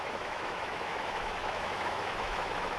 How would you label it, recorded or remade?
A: remade